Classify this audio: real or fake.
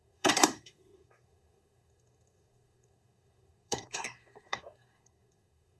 fake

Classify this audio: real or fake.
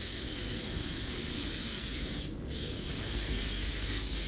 fake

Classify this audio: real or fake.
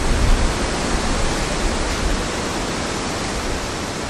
real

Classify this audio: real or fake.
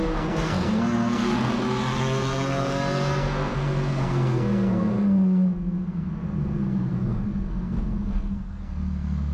fake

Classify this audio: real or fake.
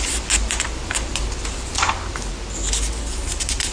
real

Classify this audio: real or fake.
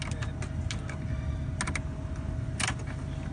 real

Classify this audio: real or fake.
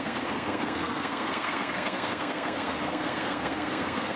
fake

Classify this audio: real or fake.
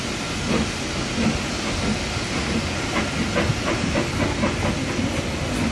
real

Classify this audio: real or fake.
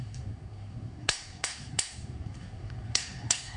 fake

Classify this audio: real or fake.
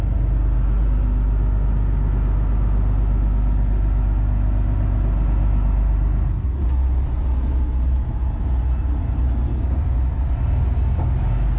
real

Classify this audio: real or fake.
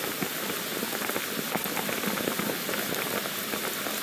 real